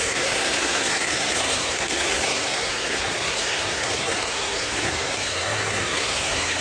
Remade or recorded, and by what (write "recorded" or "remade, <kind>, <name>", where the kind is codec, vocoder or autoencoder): remade, codec, SNAC